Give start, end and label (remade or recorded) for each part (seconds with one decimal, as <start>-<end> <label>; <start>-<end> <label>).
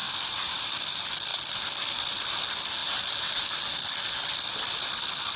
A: 0.0-0.7 remade; 0.7-2.8 recorded; 2.8-3.5 remade; 3.5-5.4 recorded